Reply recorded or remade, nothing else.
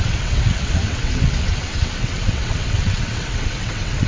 remade